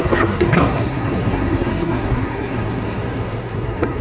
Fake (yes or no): yes